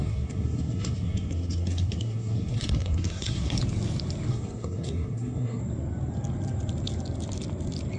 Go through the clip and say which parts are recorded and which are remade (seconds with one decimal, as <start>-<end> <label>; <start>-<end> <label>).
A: 0.0-3.6 remade; 3.6-4.3 recorded; 4.3-5.6 remade; 5.6-8.0 recorded